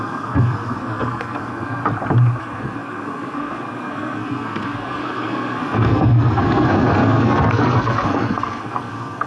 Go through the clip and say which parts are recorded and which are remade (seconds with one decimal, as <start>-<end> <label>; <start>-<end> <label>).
0.0-1.8 remade; 1.8-2.4 recorded; 2.4-9.3 remade

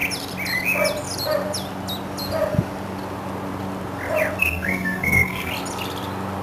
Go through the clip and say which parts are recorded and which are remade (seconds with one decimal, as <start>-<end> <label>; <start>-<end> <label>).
0.0-4.4 recorded; 4.4-5.5 remade; 5.5-6.4 recorded

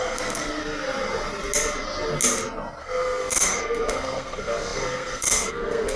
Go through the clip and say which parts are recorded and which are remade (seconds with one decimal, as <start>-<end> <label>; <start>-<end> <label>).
0.0-0.6 remade; 0.6-2.8 recorded; 2.8-6.0 remade